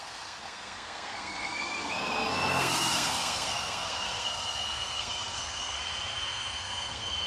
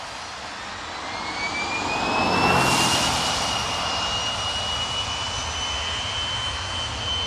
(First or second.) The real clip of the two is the second